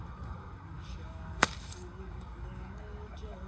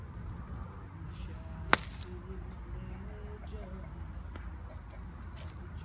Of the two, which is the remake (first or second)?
first